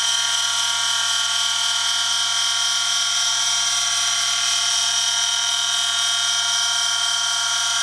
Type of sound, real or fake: real